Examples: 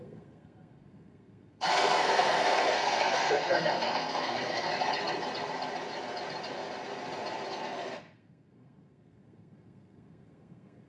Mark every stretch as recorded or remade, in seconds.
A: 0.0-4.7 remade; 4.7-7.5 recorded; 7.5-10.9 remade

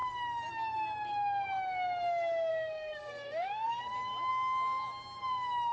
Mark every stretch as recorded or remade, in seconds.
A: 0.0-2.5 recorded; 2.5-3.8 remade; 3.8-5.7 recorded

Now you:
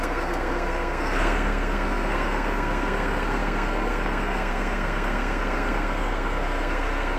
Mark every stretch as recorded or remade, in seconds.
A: 0.0-7.2 remade